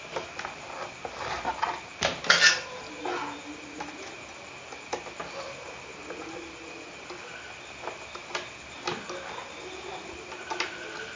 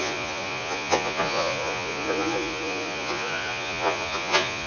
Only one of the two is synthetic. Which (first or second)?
second